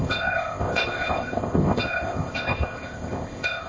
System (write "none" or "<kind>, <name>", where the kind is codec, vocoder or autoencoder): codec, ZipCodec